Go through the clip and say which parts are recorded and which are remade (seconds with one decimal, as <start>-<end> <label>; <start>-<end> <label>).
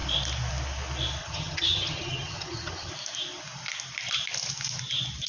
0.0-1.2 recorded; 1.2-2.9 remade; 2.9-5.3 recorded